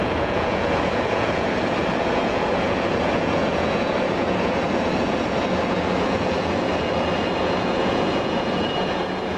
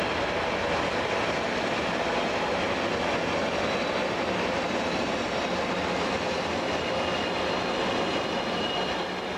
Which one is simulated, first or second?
first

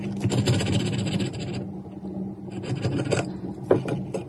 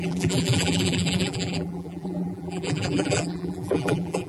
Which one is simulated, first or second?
second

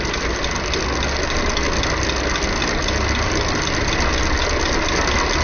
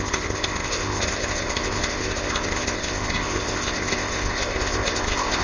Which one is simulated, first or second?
second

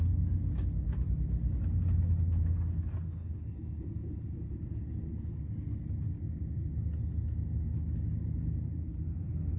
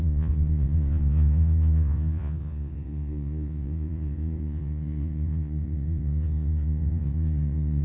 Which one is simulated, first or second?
second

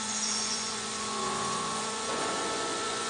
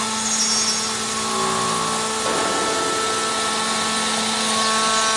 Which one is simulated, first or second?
first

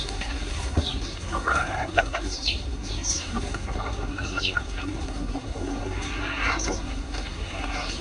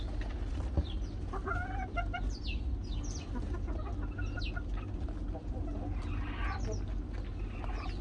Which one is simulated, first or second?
first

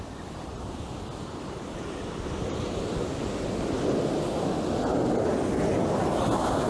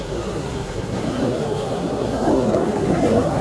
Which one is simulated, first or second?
second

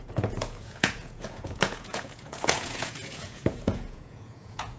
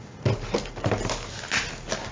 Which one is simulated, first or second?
first